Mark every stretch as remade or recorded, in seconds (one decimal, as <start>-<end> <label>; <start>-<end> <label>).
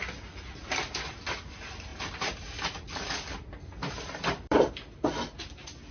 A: 0.0-1.9 recorded; 1.9-4.7 remade; 4.7-5.9 recorded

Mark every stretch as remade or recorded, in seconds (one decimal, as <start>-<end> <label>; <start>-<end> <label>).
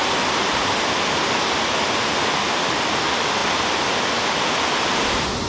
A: 0.0-5.5 recorded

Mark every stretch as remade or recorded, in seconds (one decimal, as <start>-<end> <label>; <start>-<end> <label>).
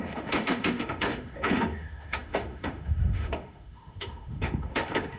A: 0.0-5.2 remade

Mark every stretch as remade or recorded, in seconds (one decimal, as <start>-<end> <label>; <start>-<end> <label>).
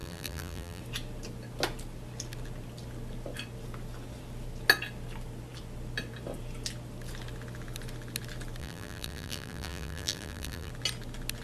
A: 0.0-0.8 remade; 0.8-8.6 recorded; 8.6-10.7 remade; 10.7-11.4 recorded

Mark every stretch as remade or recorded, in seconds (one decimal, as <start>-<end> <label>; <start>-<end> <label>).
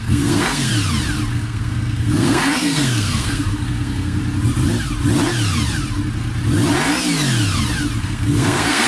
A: 0.0-0.7 remade; 0.7-1.3 recorded; 1.3-4.2 remade; 4.2-8.0 recorded; 8.0-8.9 remade